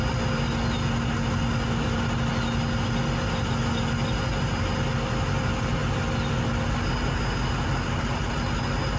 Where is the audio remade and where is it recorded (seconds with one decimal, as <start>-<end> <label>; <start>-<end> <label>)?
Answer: 0.0-9.0 recorded

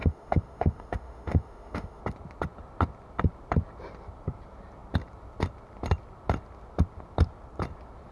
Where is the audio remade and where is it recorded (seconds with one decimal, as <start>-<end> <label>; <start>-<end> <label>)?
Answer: 0.0-2.0 remade; 2.0-8.1 recorded